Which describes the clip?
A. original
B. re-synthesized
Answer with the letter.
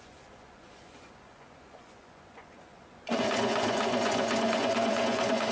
B